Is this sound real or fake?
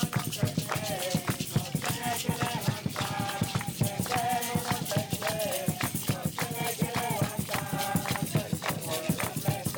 real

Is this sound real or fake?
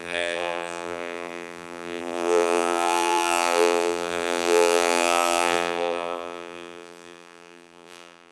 fake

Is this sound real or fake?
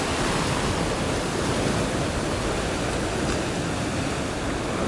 real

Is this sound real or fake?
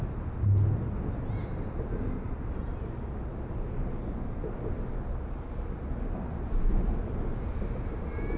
real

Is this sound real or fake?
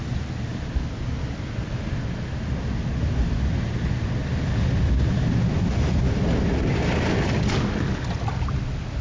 real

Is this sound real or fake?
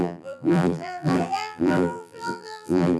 fake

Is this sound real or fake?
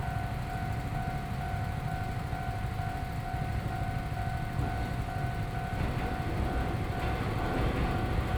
real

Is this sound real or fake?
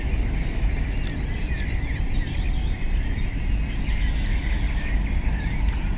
real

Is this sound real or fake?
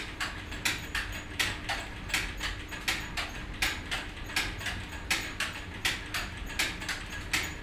real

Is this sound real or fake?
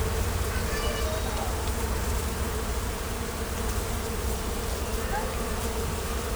real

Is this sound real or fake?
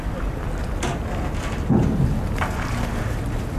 real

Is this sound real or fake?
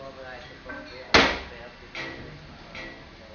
real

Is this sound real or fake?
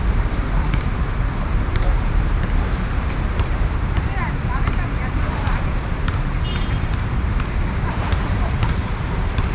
fake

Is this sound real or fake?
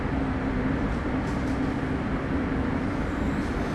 real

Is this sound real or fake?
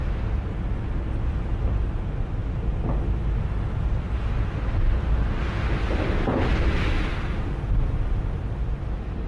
real